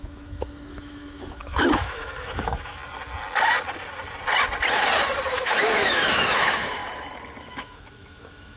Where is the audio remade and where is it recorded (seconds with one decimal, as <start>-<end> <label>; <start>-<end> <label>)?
0.0-2.8 remade; 2.8-5.3 recorded; 5.3-6.8 remade; 6.8-7.4 recorded; 7.4-8.6 remade